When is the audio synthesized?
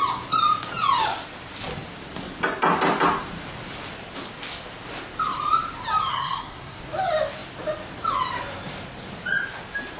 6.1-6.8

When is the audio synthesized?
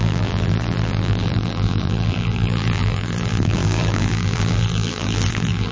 0.0-5.7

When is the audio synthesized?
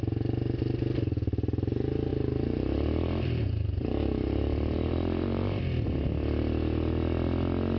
2.1-5.6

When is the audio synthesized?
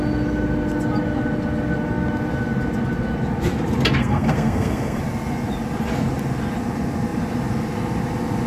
4.0-5.0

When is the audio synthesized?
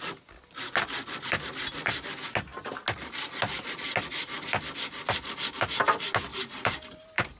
6.3-7.4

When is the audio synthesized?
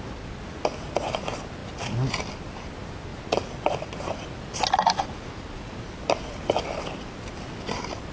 none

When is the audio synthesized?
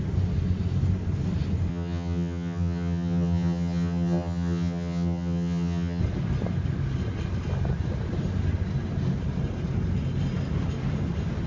1.7-6.0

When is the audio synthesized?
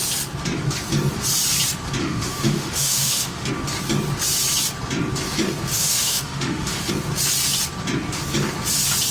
2.0-3.5; 5.7-6.9